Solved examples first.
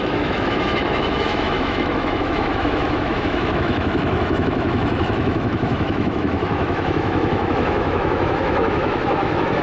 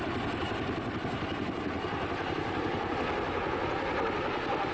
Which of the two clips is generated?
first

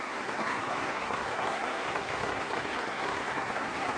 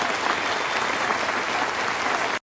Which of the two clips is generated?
first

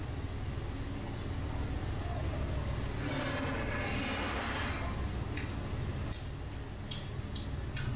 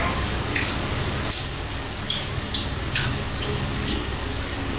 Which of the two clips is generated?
second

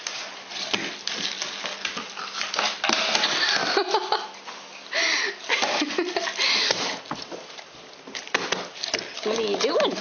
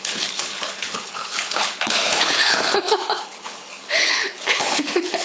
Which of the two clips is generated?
second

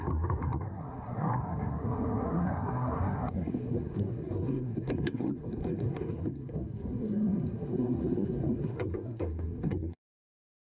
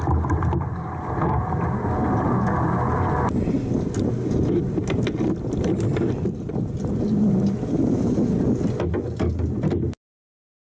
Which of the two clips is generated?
first